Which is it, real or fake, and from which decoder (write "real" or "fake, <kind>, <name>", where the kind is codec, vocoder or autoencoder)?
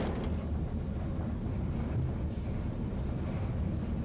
real